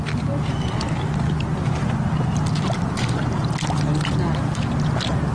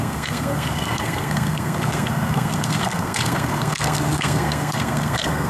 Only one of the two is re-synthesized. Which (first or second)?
second